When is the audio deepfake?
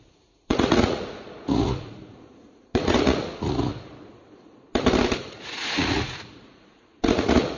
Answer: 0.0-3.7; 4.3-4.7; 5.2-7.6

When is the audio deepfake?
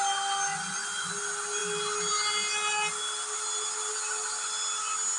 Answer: 0.5-1.1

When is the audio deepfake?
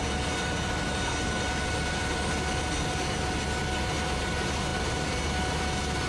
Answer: none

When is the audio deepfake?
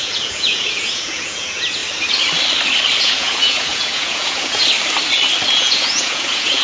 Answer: 0.0-1.8; 3.0-4.6; 5.5-6.6